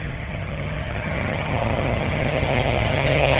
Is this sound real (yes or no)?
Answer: no